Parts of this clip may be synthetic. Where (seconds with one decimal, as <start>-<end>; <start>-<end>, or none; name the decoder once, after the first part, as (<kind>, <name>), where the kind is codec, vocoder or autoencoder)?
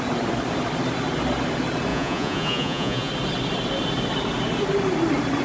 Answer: 1.9-3.1 (vocoder, Vocos)